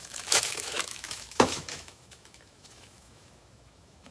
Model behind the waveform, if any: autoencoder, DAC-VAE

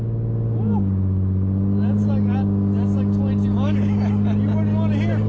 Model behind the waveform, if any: none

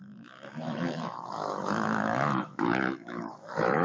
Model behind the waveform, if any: autoencoder, DAC-VAE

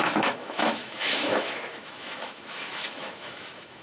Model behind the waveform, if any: autoencoder, DAC-VAE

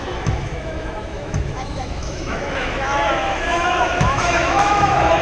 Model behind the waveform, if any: autoencoder, DAC-VAE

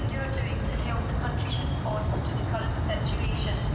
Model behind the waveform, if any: none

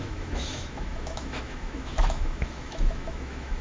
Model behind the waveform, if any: autoencoder, DAC-VAE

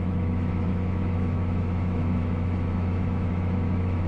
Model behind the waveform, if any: autoencoder, DAC-VAE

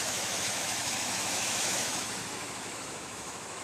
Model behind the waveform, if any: autoencoder, DAC-VAE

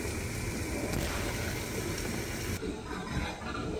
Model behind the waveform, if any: none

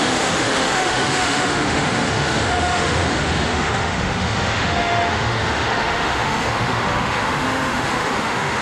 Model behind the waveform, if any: autoencoder, DAC-VAE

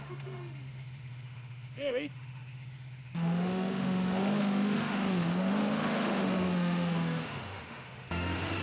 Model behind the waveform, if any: autoencoder, DAC-VAE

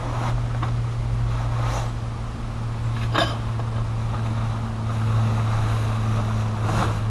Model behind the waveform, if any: none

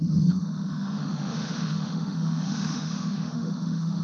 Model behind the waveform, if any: autoencoder, DAC-VAE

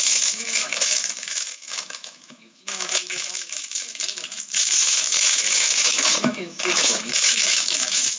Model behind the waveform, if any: autoencoder, DAC-VAE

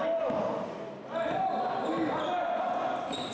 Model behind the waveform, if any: none